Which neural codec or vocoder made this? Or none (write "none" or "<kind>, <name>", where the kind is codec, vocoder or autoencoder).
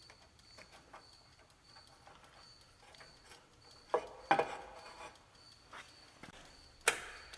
none